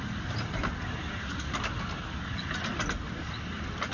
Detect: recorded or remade recorded